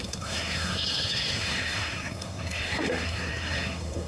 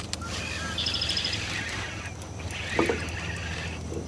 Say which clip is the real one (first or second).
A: second